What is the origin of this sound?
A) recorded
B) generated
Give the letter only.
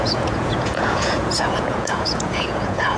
B